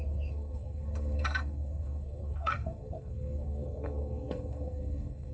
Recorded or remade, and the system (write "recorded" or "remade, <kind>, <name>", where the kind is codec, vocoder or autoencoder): remade, codec, SNAC